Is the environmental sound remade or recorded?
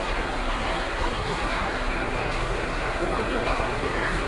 remade